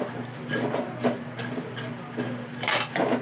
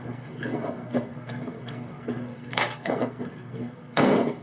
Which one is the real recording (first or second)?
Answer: first